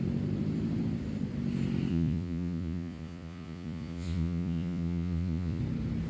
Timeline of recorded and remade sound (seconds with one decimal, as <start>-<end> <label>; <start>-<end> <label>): 0.0-1.9 recorded; 1.9-5.6 remade; 5.6-6.1 recorded